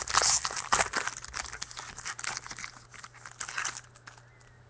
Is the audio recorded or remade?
recorded